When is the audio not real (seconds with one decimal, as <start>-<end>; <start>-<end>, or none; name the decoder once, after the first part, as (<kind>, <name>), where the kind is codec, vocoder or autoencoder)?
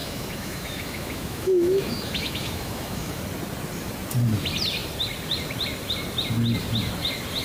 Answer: 0.0-3.2 (autoencoder, DAC-VAE)